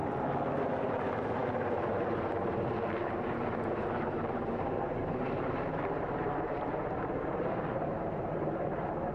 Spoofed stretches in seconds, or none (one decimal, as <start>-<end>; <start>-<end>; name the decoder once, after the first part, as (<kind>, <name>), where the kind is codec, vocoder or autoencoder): 0.6-9.1 (vocoder, BigVGAN v2)